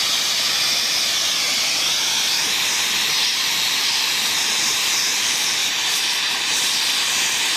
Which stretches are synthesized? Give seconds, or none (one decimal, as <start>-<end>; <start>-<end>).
3.3-4.2; 5.6-6.8

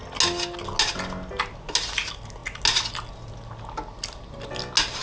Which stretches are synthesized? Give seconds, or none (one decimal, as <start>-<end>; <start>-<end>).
none

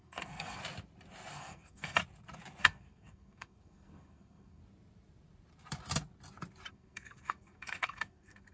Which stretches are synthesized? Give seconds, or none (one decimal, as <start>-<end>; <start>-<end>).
0.0-0.6; 1.3-2.0; 2.6-4.6; 6.7-8.5

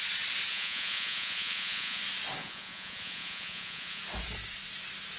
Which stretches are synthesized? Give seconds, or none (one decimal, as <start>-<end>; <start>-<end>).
0.5-2.0; 2.4-4.0

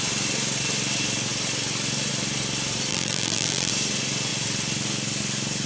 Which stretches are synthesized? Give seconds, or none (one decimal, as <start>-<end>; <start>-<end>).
2.9-3.7

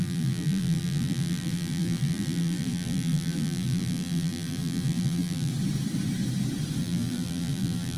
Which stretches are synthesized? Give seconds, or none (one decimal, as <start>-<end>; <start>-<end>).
0.0-5.5; 6.8-8.0

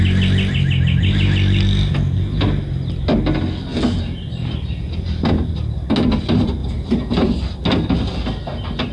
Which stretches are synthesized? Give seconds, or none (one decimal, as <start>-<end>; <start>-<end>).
none